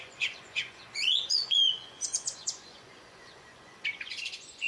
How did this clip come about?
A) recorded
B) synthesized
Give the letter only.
B